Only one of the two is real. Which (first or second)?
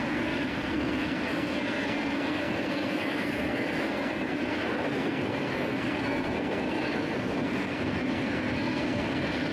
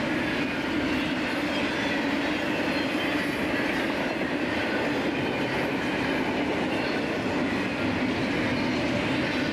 second